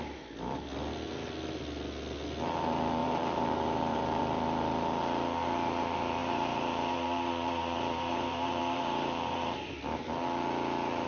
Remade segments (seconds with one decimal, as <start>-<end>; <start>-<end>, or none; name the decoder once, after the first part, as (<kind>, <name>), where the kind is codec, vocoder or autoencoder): 3.0-4.2 (vocoder, BigVGAN v2); 6.2-9.7